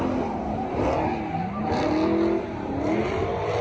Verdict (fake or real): real